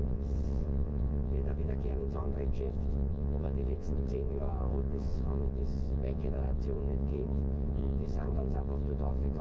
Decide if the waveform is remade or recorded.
remade